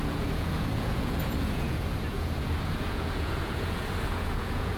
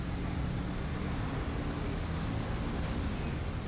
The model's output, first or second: first